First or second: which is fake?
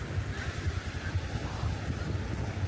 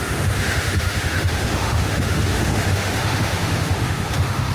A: second